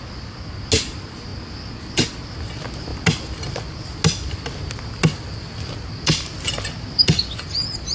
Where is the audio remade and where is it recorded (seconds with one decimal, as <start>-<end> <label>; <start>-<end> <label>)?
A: 0.0-7.9 recorded